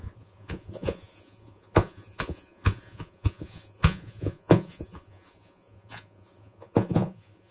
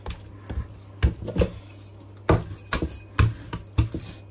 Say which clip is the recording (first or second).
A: second